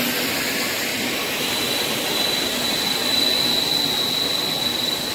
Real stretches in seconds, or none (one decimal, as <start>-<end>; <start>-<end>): 0.0-5.1